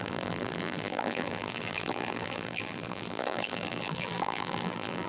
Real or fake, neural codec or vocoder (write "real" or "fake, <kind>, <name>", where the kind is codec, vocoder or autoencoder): fake, vocoder, BigVGAN v2